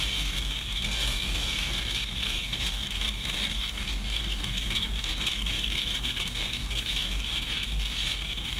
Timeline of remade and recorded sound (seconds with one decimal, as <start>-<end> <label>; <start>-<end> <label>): 0.0-8.6 remade